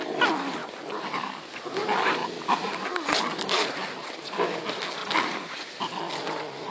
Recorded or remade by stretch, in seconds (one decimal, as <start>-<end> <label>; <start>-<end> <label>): 0.0-6.7 recorded